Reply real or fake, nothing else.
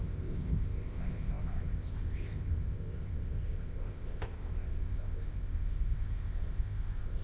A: fake